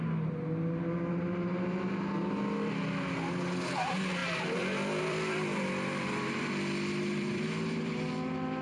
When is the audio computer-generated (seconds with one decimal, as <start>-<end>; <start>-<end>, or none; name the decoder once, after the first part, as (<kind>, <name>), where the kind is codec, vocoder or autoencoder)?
4.2-8.1 (vocoder, BigVGAN v2)